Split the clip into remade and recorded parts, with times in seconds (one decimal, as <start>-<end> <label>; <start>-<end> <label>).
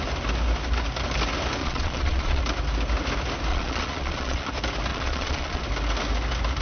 0.0-1.6 recorded; 1.6-2.4 remade; 2.4-3.5 recorded; 3.5-4.5 remade; 4.5-4.9 recorded; 4.9-5.6 remade; 5.6-6.6 recorded